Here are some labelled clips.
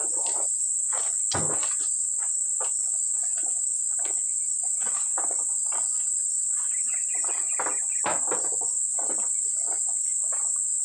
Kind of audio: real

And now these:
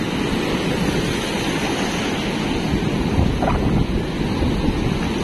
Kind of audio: real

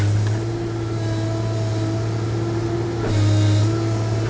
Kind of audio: real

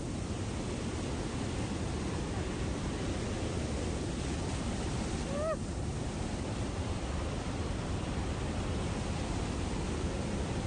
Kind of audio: real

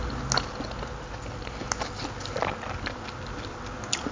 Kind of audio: real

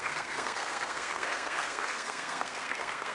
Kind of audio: fake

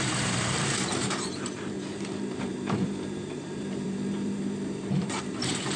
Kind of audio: fake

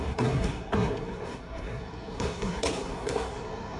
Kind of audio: fake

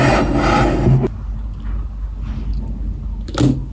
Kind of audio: real